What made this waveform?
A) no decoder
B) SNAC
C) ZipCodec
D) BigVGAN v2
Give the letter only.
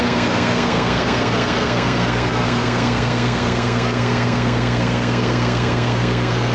B